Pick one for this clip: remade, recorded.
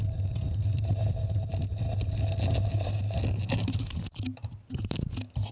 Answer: recorded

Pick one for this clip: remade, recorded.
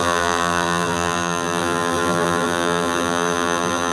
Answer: remade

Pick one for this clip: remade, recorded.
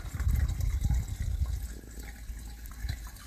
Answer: recorded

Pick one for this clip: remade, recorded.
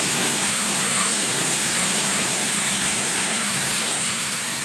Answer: remade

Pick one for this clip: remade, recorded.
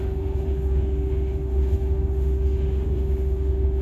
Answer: remade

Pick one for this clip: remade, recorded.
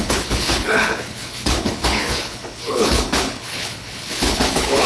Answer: remade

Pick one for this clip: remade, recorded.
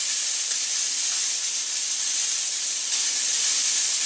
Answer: recorded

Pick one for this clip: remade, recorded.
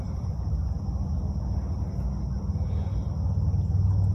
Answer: recorded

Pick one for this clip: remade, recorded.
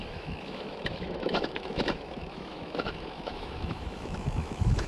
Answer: remade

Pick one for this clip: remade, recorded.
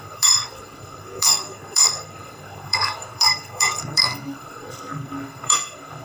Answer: remade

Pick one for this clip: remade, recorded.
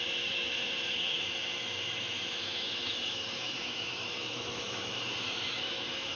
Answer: remade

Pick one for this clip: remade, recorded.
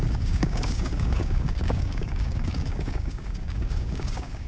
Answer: remade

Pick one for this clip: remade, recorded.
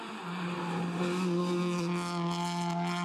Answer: recorded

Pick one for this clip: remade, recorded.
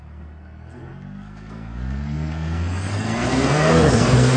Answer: remade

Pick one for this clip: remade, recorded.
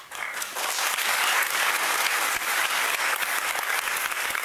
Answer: remade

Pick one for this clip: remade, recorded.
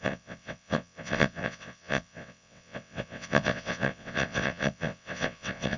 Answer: remade